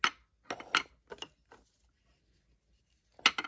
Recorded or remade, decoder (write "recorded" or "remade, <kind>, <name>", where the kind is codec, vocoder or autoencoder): recorded